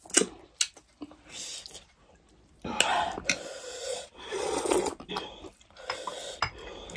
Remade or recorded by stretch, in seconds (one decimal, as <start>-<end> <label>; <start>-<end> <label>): 0.0-3.9 recorded; 3.9-5.1 remade; 5.1-7.0 recorded

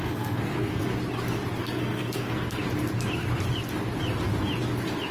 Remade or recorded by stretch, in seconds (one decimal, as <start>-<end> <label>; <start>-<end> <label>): 0.0-0.9 remade; 0.9-1.6 recorded; 1.6-2.6 remade; 2.6-5.1 recorded

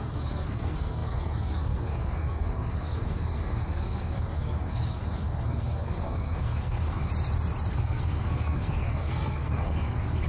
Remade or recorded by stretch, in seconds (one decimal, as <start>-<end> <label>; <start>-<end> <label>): 0.0-7.1 remade; 7.1-7.7 recorded; 7.7-10.3 remade